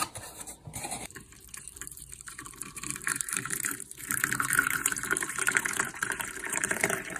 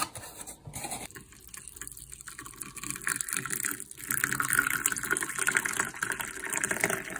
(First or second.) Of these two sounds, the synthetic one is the first